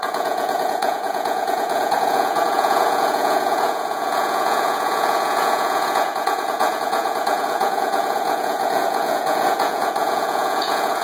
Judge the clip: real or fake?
fake